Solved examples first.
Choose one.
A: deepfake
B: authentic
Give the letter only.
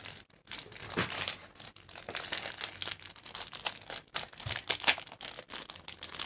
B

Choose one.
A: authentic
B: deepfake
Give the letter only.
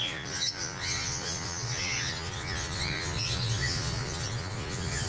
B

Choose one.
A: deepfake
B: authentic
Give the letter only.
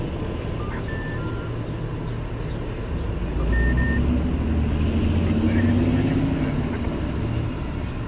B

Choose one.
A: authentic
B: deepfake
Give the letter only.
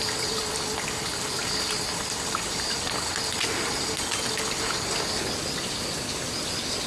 A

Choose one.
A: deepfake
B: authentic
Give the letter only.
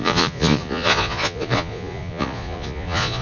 A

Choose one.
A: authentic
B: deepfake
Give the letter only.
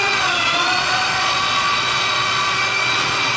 B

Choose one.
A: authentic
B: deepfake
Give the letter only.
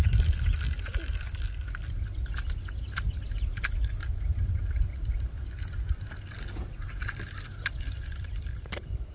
A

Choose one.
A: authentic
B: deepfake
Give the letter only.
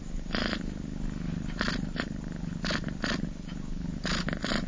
A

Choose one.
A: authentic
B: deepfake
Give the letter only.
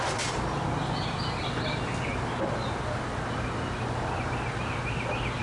A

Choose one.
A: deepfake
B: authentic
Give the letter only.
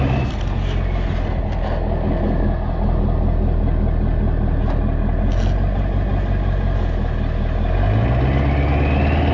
B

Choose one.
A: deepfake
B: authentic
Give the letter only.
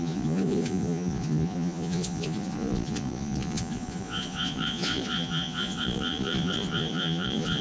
A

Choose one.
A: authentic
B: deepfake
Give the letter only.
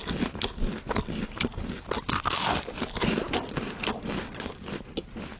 A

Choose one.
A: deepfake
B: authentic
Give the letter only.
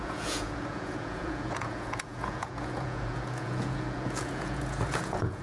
A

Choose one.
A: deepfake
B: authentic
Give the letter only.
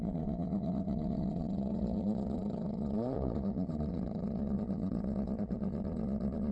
A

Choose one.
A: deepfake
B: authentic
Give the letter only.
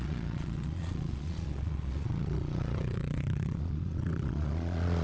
A